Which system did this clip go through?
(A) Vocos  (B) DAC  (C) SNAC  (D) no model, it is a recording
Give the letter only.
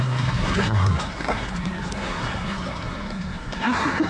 C